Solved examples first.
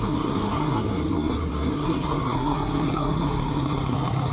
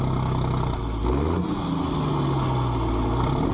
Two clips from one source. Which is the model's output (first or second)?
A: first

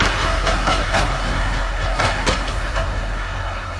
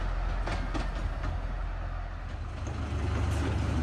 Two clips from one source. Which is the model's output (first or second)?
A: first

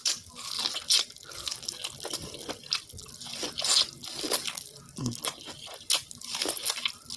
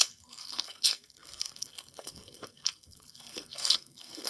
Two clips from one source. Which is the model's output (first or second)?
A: second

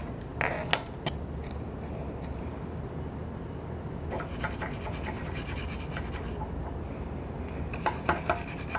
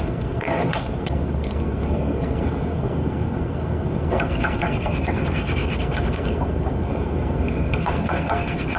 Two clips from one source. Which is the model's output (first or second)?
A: second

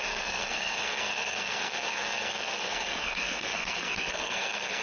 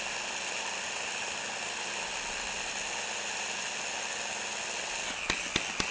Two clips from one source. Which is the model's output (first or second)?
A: first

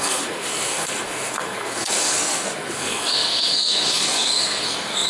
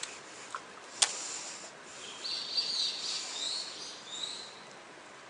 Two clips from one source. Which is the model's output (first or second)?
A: first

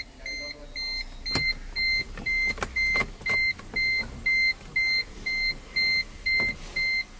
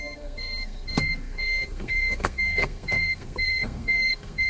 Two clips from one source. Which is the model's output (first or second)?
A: second